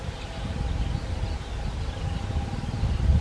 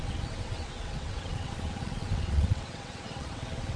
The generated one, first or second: second